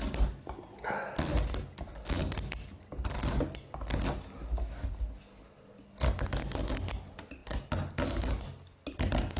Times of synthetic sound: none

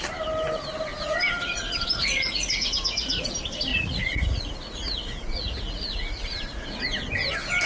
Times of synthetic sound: 0.9-3.3; 3.7-6.8

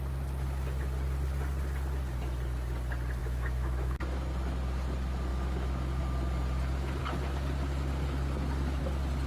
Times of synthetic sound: 3.2-4.0; 5.3-6.0